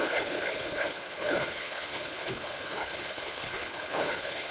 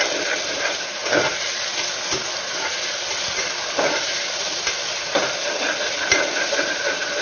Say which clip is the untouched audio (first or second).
second